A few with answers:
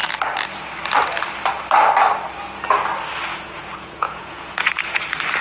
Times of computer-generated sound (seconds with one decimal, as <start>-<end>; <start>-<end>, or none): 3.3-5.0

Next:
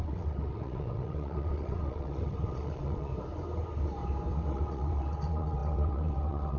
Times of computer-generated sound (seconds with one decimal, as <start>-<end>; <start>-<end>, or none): 0.0-3.1; 4.3-6.6

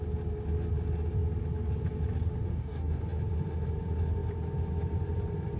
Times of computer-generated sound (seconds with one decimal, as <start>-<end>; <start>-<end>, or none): 2.5-3.0

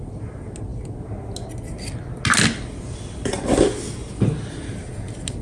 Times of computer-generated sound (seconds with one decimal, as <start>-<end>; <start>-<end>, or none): none